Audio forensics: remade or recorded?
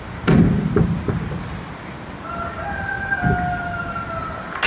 recorded